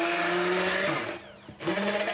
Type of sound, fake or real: real